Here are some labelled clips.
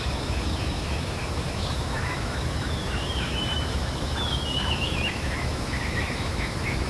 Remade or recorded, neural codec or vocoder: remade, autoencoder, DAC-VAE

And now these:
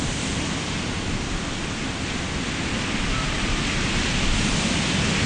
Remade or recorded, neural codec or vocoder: recorded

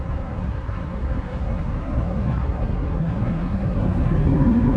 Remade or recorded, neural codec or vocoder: remade, codec, SNAC